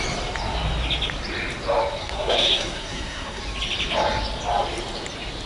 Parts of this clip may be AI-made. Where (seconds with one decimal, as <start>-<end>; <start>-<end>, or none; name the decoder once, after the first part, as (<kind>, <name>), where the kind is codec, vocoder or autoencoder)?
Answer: 2.0-3.4 (codec, SNAC)